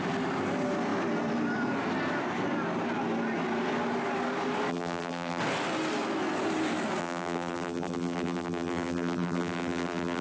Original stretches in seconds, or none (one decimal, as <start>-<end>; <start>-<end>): 0.0-4.7; 5.4-7.0